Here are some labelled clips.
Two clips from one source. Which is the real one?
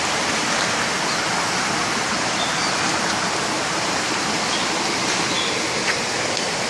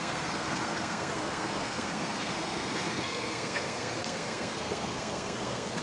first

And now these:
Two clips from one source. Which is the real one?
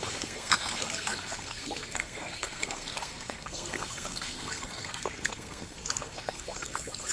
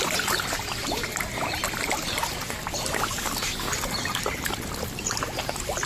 second